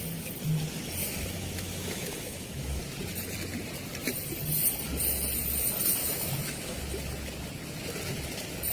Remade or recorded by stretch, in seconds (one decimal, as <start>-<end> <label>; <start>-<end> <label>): 0.0-1.0 recorded; 1.0-2.8 remade; 2.8-6.0 recorded; 6.0-6.8 remade; 6.8-8.7 recorded